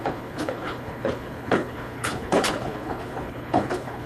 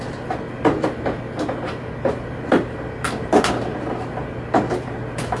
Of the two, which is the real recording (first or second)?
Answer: second